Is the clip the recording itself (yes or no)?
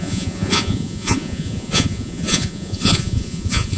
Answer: no